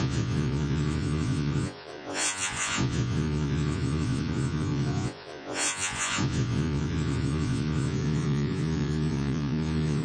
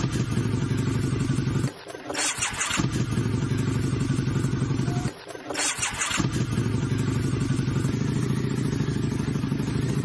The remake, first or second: first